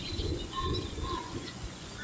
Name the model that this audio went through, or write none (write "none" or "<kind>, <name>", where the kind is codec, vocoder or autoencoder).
vocoder, Vocos